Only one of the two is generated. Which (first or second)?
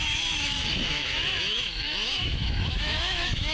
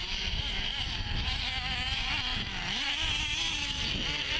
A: first